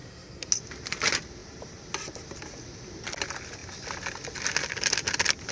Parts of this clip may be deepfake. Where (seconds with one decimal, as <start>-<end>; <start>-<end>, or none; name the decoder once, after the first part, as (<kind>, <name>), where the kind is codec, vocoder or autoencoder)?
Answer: 0.0-0.5 (codec, SNAC)